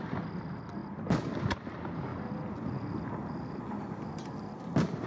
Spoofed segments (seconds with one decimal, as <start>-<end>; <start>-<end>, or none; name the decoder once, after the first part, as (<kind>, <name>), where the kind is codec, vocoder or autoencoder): none